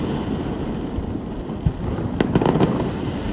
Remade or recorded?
recorded